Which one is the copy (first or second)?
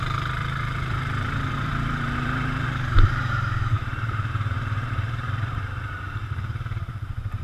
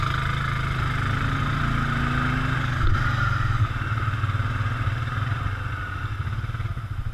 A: first